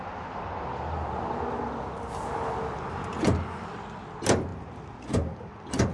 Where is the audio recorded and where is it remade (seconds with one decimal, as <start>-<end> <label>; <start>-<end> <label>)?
0.0-4.5 recorded; 4.5-5.5 remade; 5.5-5.9 recorded